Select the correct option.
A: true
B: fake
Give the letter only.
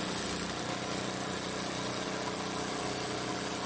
A